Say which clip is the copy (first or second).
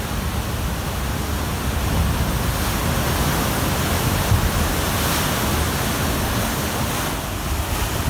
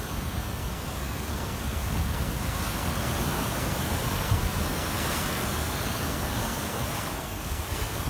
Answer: second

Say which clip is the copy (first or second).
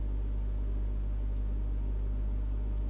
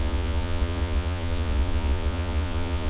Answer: second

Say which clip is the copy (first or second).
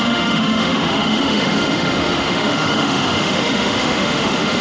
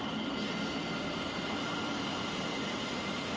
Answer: first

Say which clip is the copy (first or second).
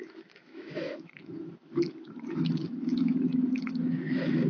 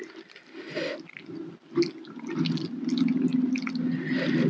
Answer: first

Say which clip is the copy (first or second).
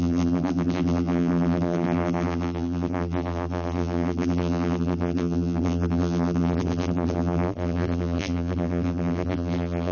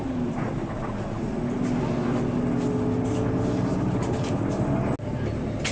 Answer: first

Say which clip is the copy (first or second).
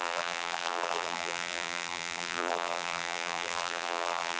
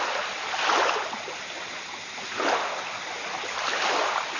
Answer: first